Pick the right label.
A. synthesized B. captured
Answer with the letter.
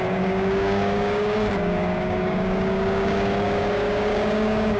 A